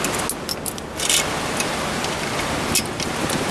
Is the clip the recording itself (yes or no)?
yes